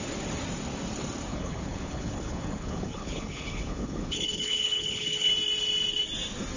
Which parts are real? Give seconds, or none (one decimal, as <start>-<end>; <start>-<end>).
0.0-1.3; 5.3-6.6